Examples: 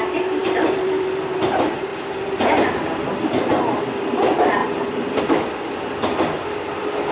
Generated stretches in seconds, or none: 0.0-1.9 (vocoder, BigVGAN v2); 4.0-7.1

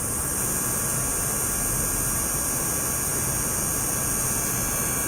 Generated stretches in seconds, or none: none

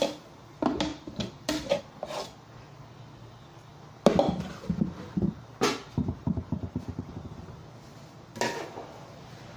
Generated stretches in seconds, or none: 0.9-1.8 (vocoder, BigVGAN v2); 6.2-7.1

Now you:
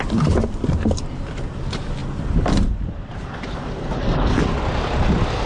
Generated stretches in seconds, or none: none